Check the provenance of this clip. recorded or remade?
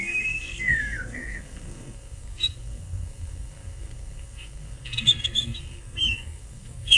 remade